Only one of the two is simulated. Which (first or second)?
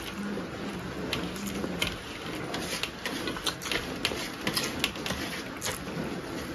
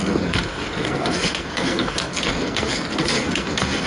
second